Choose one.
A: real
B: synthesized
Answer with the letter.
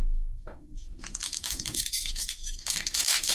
B